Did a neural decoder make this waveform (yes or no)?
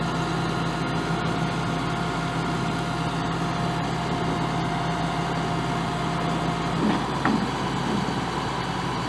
no